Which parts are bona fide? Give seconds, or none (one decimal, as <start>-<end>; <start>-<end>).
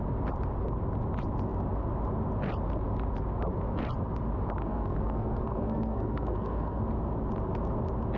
0.0-4.6; 6.8-8.2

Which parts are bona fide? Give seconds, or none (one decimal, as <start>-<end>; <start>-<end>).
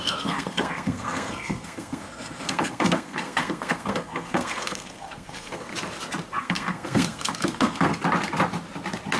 5.7-6.4; 7.9-9.2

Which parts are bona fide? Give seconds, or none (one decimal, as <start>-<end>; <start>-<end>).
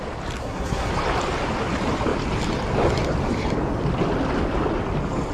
0.0-0.4; 0.9-5.3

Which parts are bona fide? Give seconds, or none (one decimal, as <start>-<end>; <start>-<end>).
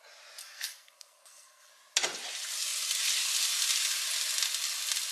0.0-0.4; 1.7-5.1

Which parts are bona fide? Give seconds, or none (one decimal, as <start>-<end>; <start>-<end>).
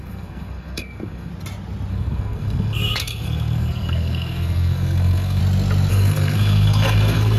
1.3-1.9; 5.4-5.9